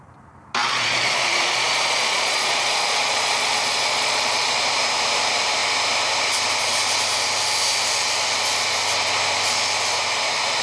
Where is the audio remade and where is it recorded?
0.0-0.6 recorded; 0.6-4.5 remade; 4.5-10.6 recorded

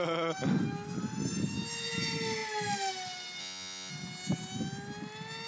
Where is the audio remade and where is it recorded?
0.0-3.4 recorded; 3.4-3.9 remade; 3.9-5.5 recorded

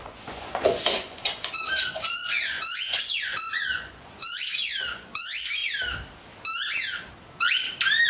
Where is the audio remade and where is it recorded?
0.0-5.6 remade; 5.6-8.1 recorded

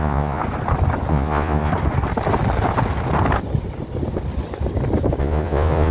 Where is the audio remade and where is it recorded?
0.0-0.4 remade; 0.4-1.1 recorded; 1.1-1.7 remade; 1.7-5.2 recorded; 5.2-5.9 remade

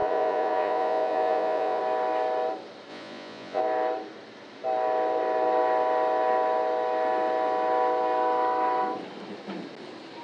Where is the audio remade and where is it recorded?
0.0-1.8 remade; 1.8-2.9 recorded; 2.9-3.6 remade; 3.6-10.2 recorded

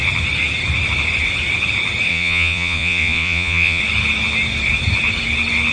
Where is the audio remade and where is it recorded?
0.0-2.1 recorded; 2.1-3.8 remade; 3.8-5.7 recorded